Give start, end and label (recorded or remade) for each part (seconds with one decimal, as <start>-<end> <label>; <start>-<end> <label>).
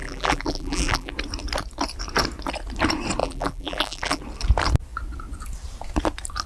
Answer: 0.0-1.1 remade; 1.1-3.2 recorded; 3.2-4.2 remade; 4.2-6.5 recorded